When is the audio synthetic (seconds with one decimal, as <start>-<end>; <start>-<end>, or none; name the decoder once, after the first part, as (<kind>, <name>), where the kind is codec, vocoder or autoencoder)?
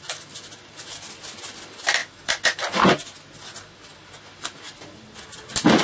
none